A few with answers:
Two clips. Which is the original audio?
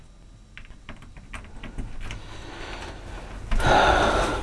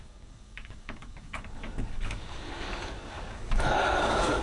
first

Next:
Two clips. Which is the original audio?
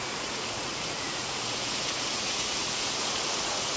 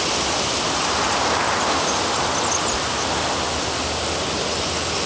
second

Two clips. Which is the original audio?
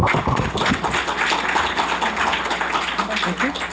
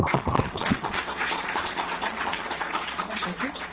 first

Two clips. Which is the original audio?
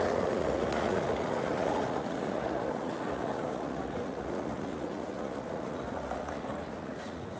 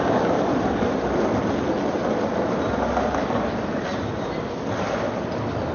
second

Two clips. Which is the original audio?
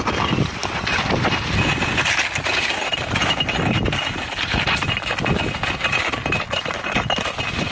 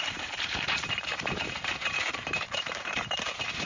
first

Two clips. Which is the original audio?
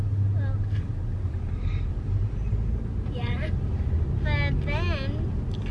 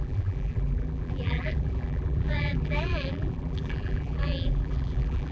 first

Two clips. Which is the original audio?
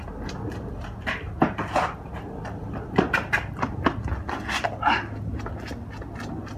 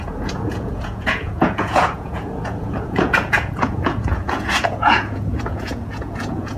first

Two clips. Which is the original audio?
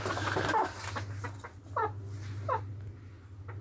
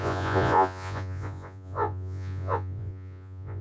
first